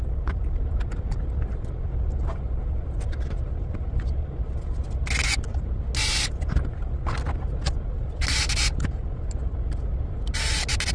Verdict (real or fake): real